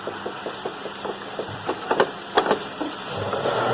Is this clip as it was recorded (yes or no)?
yes